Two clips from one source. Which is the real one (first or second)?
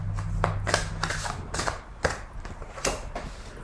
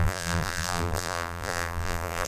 first